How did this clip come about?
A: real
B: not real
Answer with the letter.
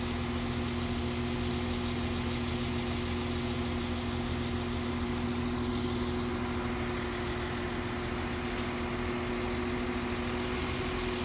A